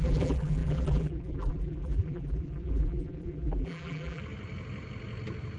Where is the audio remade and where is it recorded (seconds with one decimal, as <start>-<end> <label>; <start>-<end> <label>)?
0.0-4.2 remade; 4.2-5.6 recorded